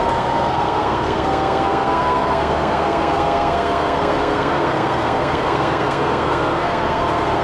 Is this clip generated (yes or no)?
yes